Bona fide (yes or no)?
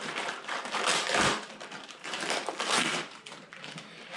no